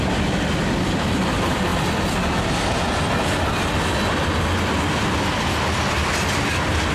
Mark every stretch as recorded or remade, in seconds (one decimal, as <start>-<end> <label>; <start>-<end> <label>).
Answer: 0.0-6.9 recorded